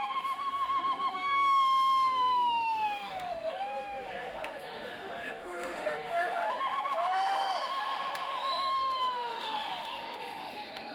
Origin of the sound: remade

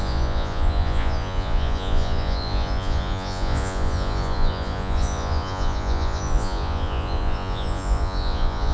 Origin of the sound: remade